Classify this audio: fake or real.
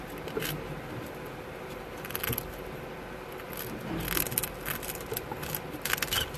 real